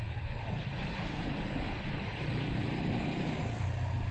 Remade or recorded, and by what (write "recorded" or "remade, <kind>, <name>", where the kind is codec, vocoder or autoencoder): recorded